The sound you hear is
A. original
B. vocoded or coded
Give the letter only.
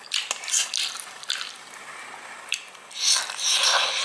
A